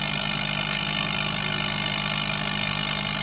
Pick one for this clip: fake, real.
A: real